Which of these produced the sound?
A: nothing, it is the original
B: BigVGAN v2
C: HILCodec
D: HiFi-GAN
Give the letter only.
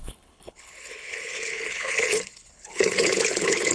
C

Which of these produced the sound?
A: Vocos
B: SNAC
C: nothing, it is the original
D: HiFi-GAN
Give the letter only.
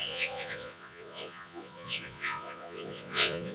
A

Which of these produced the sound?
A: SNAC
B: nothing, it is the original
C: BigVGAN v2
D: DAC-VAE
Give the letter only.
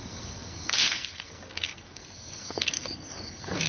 A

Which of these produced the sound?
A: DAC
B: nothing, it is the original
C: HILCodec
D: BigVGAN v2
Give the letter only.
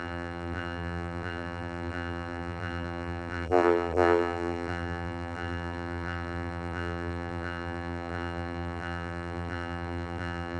D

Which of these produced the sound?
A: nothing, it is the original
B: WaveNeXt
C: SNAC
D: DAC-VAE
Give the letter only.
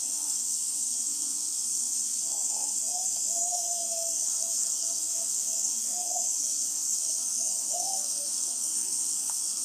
C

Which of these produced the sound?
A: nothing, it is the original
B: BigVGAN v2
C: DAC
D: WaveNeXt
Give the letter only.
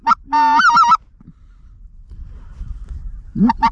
A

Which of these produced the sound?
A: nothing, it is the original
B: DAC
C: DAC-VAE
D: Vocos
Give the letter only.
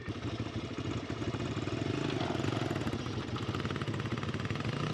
A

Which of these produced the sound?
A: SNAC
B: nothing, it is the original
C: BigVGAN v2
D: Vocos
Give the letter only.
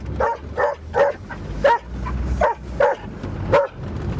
B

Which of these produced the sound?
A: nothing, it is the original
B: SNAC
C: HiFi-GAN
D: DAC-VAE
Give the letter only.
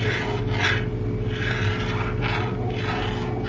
A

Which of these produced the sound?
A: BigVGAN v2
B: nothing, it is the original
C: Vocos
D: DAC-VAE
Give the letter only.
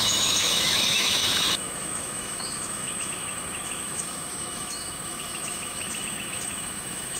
D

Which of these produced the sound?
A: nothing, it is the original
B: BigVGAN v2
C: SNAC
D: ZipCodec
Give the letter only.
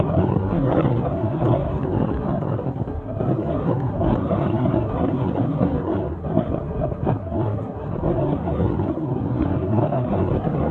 C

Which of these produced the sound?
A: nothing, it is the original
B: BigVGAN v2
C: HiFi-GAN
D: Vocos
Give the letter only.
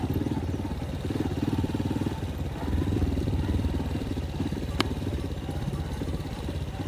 B